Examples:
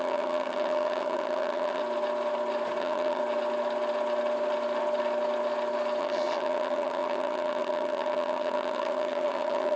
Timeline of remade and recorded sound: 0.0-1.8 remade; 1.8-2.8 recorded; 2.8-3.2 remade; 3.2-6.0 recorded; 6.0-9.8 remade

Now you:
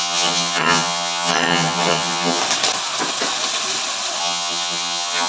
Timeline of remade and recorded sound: 0.0-2.4 remade; 2.4-4.2 recorded; 4.2-5.3 remade

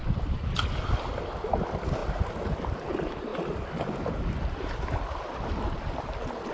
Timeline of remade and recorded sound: 0.0-6.5 recorded

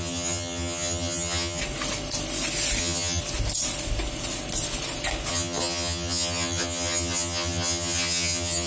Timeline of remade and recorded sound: 0.0-1.6 remade; 1.6-2.8 recorded; 2.8-3.2 remade; 3.2-5.3 recorded; 5.3-8.7 remade

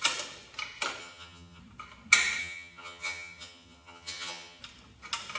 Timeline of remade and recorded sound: 0.0-1.0 recorded; 1.0-1.6 remade; 1.6-2.4 recorded; 2.4-4.6 remade; 4.6-5.4 recorded